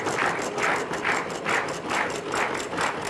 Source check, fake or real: real